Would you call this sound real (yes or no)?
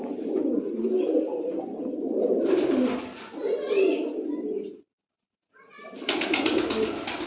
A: yes